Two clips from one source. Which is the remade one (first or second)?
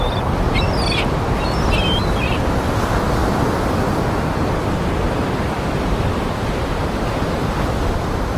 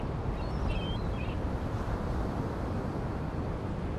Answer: second